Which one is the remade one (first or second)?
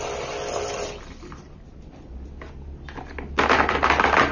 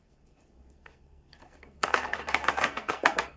second